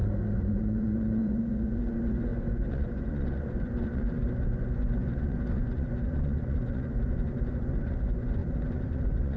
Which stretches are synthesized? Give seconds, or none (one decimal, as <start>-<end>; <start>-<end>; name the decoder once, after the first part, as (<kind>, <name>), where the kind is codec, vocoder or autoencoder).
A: 0.0-9.4 (vocoder, Vocos)

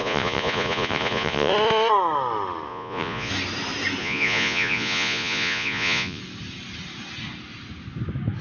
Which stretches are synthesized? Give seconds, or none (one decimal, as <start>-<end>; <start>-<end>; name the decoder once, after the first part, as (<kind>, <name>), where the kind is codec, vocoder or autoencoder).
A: 0.0-1.5 (vocoder, Vocos); 2.7-3.3; 4.0-6.2

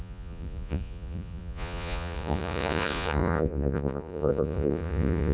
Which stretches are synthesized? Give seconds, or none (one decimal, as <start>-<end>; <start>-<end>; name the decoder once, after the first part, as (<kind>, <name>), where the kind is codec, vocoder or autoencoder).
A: 0.0-5.3 (vocoder, Vocos)

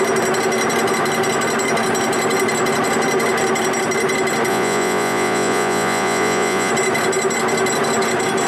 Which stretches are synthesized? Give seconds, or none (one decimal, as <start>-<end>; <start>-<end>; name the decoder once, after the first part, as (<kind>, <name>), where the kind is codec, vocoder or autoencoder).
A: 4.5-6.7 (vocoder, Vocos)

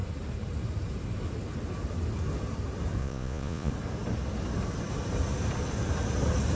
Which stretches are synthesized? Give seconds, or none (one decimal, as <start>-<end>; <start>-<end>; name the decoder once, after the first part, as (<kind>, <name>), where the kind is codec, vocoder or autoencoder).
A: 3.0-3.7 (vocoder, Vocos)

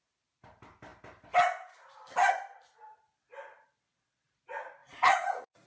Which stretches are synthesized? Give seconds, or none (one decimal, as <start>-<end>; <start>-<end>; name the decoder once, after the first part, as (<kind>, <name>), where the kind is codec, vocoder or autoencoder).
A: 4.8-5.7 (vocoder, Vocos)

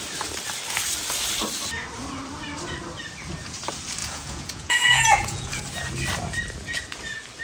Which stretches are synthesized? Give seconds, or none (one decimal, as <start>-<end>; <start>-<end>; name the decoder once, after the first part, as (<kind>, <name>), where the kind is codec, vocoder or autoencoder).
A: 4.0-5.6 (vocoder, Vocos)